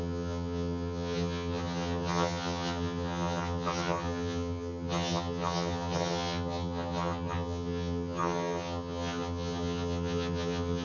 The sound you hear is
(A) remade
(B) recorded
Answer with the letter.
A